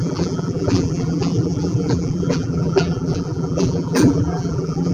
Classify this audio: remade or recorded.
remade